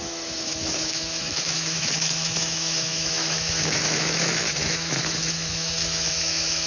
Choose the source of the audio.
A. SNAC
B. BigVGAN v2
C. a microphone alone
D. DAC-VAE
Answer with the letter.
D